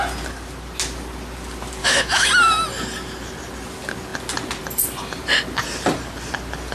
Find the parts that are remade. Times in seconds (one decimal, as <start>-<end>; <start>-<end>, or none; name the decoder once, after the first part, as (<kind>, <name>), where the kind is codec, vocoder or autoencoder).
1.8-2.3 (autoencoder, DAC-VAE)